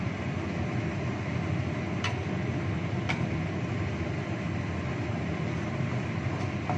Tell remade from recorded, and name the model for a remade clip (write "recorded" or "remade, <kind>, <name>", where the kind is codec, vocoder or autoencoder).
recorded